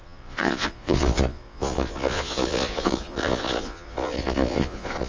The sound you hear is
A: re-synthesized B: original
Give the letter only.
A